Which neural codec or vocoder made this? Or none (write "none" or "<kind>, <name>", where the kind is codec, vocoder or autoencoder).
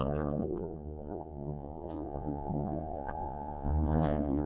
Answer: vocoder, Vocos